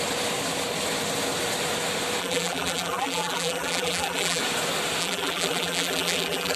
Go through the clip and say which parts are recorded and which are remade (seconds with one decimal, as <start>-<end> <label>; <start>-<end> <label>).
0.0-2.2 recorded; 2.2-4.4 remade; 4.4-5.0 recorded; 5.0-6.6 remade